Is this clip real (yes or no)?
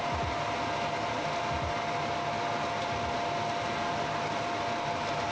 yes